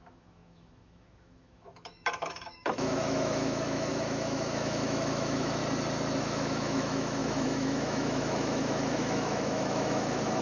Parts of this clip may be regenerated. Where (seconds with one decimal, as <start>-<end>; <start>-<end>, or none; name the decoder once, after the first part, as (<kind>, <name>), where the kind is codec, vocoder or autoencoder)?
0.0-5.6 (autoencoder, DAC-VAE); 6.2-10.4